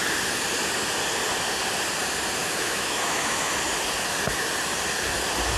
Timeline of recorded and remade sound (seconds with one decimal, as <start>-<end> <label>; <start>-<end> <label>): 0.0-2.4 recorded; 2.4-3.6 remade; 3.6-5.6 recorded

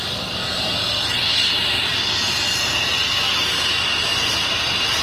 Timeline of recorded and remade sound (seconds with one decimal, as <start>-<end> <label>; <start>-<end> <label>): 0.0-5.0 recorded

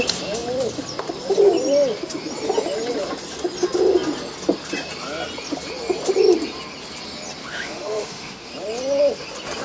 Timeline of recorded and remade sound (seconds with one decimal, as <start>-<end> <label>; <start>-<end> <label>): 0.0-7.5 recorded; 7.5-8.5 remade; 8.5-9.6 recorded

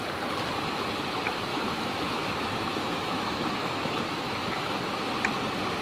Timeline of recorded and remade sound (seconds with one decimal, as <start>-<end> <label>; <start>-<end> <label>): 0.0-1.5 recorded; 1.5-5.0 remade; 5.0-5.8 recorded

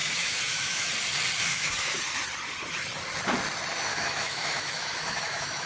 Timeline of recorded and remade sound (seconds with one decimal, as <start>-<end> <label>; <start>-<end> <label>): 0.0-0.9 remade; 0.9-1.5 recorded; 1.5-2.0 remade; 2.0-3.9 recorded; 3.9-5.7 remade

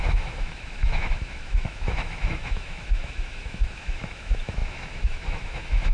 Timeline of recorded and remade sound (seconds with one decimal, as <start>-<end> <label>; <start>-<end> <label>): 0.0-5.9 remade